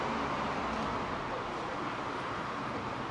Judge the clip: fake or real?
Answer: real